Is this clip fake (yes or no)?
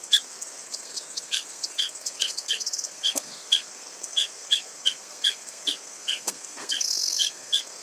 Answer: yes